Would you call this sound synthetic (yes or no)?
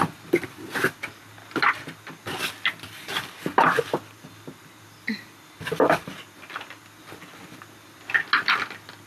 no